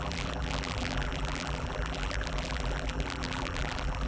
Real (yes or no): no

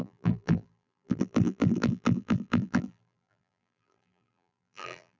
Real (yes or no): no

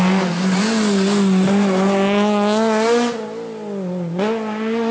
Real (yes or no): yes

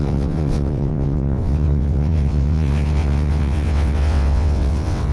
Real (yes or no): no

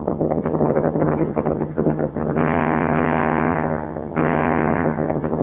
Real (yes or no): no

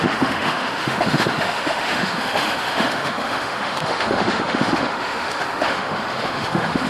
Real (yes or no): no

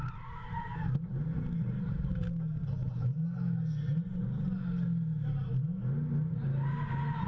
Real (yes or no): yes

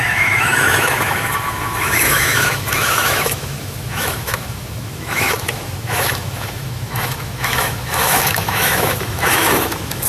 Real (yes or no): no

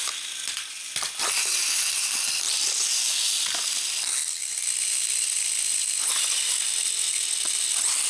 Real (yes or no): yes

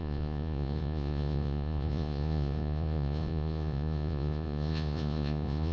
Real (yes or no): no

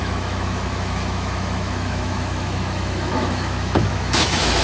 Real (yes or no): no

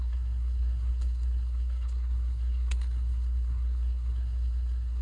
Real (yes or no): no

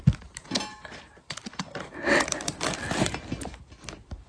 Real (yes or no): yes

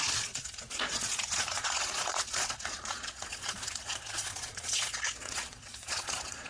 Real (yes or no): no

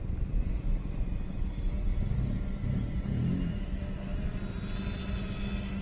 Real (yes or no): yes